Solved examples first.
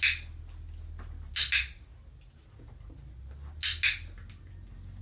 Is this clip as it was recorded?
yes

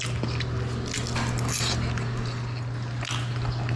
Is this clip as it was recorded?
yes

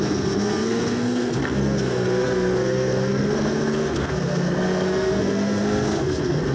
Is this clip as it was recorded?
no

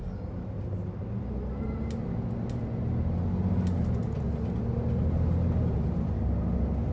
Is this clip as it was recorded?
yes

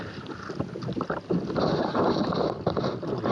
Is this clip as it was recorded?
yes